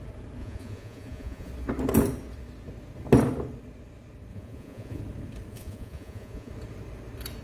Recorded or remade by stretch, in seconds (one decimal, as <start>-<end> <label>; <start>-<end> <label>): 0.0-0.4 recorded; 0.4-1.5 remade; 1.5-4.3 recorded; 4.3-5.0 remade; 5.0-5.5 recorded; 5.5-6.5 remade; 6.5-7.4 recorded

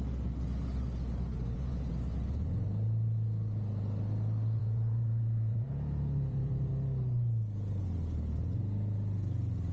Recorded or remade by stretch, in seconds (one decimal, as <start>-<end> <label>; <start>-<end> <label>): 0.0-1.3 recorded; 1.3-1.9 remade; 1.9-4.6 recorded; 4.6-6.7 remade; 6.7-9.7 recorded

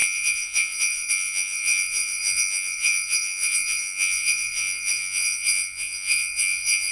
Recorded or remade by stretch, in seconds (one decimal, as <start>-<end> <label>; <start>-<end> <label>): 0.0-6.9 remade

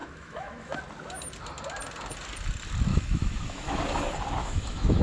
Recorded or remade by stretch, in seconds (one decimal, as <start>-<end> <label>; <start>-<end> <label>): 0.0-0.8 remade; 0.8-2.9 recorded; 2.9-3.8 remade; 3.8-4.4 recorded; 4.4-5.0 remade

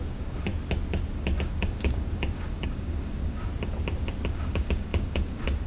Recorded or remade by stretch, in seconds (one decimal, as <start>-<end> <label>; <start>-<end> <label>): 0.0-0.5 remade; 0.5-1.4 recorded; 1.4-3.5 remade; 3.5-4.3 recorded; 4.3-5.7 remade

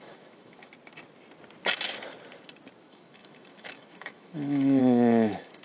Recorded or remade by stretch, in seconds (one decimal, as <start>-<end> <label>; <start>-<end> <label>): 0.0-0.7 remade; 0.7-2.8 recorded; 2.8-5.6 remade